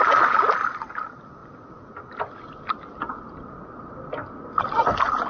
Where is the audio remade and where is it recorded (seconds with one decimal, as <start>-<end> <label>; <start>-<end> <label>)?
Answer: 0.0-5.3 recorded